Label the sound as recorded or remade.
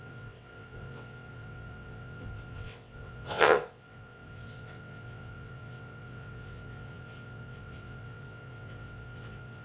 remade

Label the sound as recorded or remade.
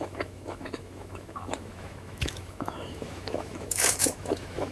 remade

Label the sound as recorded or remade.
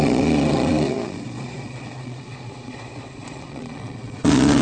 remade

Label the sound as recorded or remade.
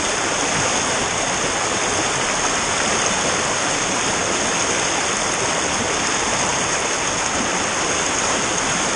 recorded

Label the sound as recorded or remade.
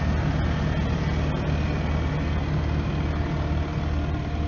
recorded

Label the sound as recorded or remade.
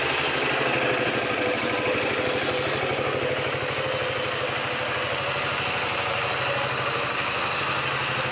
recorded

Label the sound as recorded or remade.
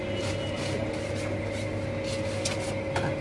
recorded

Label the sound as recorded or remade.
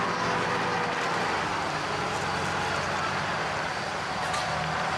recorded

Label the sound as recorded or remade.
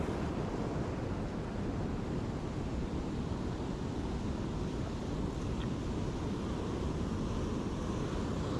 recorded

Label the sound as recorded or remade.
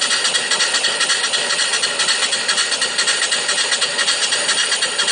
recorded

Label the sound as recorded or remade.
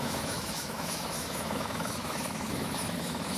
remade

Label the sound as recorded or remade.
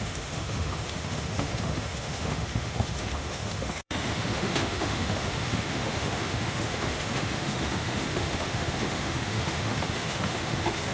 remade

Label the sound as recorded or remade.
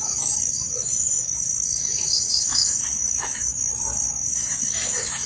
remade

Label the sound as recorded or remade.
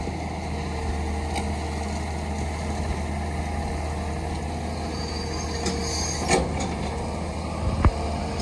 recorded